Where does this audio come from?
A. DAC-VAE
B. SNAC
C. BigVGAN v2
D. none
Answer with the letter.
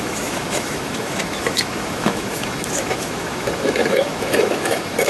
A